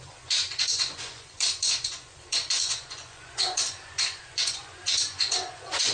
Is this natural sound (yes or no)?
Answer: no